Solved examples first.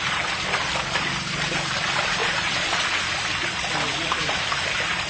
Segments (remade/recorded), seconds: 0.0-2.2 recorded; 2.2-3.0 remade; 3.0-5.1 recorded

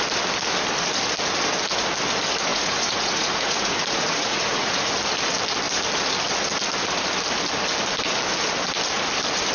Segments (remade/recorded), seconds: 0.0-2.5 recorded; 2.5-4.9 remade; 4.9-9.5 recorded